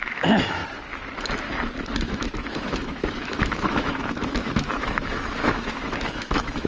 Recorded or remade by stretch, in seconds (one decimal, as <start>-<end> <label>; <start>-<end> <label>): 0.0-0.6 remade; 0.6-2.0 recorded; 2.0-6.7 remade